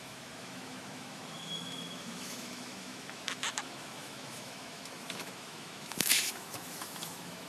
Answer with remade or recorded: remade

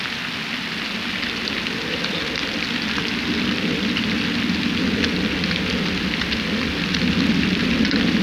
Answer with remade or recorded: recorded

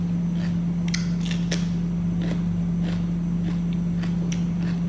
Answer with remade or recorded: recorded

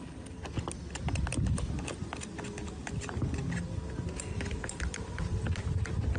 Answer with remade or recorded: recorded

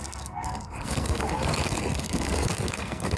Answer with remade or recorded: remade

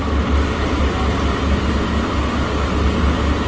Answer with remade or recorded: recorded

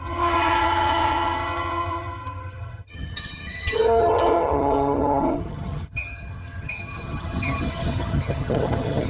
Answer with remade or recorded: remade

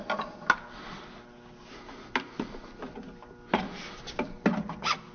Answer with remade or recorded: recorded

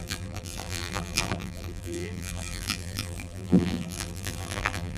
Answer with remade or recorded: remade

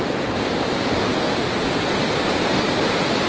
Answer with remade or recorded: recorded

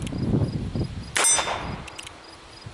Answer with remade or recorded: recorded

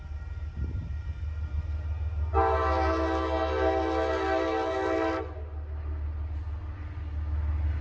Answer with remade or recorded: recorded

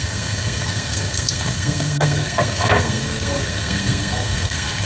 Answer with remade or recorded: remade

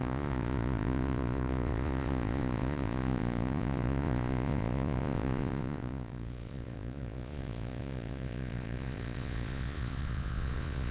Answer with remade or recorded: remade